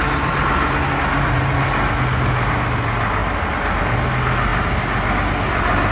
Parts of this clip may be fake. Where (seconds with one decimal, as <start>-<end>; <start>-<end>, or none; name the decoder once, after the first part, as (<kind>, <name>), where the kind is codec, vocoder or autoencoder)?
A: none